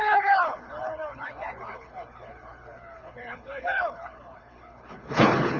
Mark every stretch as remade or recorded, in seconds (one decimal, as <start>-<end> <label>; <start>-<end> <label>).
0.0-5.6 remade